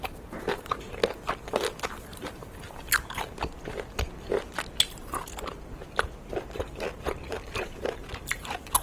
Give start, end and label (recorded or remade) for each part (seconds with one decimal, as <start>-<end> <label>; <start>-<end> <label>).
0.0-1.0 remade; 1.0-1.8 recorded; 1.8-2.4 remade; 2.4-7.5 recorded; 7.5-8.8 remade